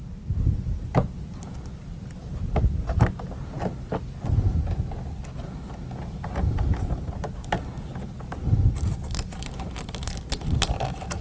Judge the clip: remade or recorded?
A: recorded